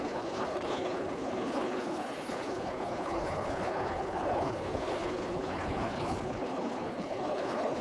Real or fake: fake